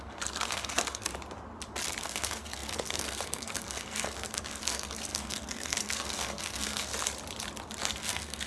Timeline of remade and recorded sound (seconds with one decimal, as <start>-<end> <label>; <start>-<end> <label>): 0.0-1.1 remade; 1.1-2.0 recorded; 2.0-6.9 remade; 6.9-7.8 recorded; 7.8-8.5 remade